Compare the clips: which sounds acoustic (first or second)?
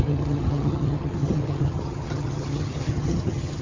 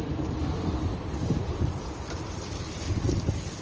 second